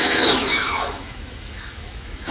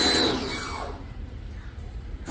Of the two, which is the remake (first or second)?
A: first